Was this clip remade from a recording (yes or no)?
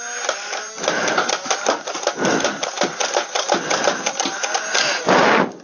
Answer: no